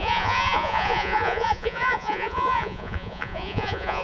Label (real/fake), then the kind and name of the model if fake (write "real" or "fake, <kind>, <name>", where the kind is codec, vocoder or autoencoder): fake, vocoder, Vocos